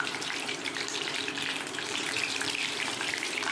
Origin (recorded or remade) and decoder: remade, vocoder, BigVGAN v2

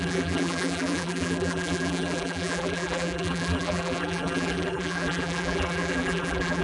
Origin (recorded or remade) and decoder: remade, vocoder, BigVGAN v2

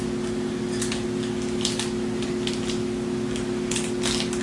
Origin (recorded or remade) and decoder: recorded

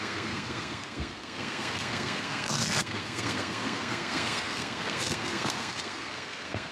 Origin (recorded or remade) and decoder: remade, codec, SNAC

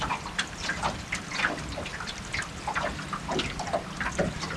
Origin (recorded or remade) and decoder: remade, vocoder, BigVGAN v2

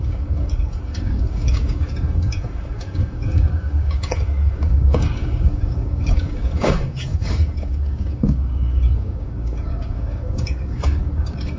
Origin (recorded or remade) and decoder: remade, codec, DAC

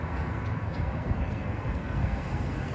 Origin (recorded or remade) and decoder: remade, codec, SNAC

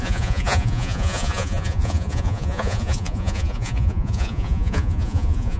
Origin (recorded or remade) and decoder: remade, vocoder, Vocos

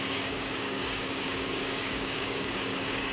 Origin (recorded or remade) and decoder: remade, codec, DAC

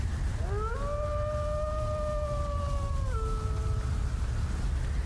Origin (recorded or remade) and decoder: recorded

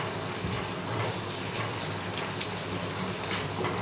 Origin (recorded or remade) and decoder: recorded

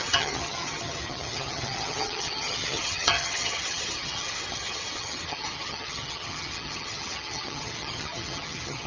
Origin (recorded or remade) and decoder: remade, vocoder, HiFi-GAN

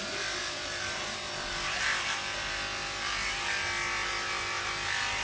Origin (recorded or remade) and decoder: recorded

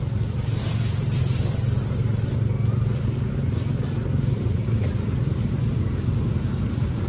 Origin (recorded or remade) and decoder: recorded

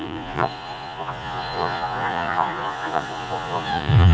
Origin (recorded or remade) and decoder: remade, vocoder, Vocos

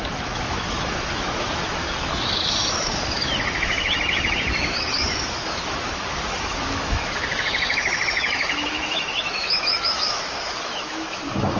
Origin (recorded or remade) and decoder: remade, autoencoder, DAC-VAE